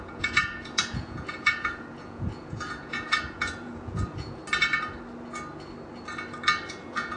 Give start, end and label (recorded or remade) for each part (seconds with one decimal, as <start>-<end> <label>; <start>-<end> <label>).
0.0-4.4 remade; 4.4-6.7 recorded; 6.7-7.2 remade